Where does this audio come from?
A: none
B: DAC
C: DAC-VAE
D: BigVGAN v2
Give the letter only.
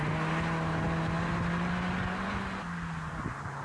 A